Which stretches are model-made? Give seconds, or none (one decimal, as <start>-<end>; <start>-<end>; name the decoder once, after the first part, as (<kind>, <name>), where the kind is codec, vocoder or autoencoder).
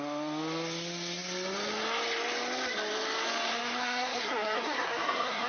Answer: 3.5-5.5 (codec, SNAC)